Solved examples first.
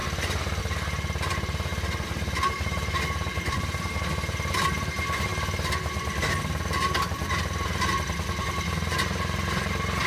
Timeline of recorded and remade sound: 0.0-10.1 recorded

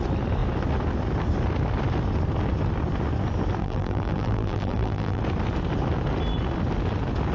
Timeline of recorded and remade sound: 0.0-3.6 recorded; 3.6-5.2 remade; 5.2-7.3 recorded

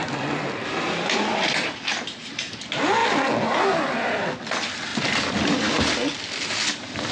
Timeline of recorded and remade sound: 0.0-1.9 remade; 1.9-7.1 recorded